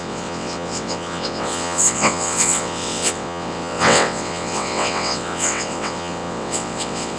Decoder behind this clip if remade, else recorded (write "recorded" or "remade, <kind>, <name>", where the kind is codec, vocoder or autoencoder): remade, vocoder, WaveNeXt